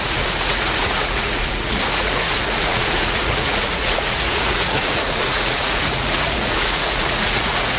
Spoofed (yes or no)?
yes